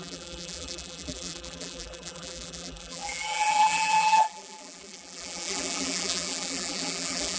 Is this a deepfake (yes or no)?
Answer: yes